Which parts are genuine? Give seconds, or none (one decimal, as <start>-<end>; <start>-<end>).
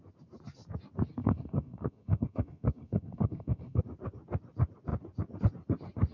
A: 0.0-1.2; 3.8-6.1